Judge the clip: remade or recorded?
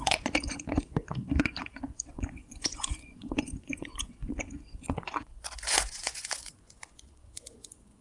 remade